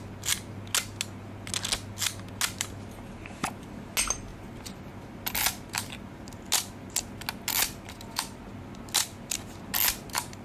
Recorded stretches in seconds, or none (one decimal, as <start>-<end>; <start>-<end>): 0.0-10.4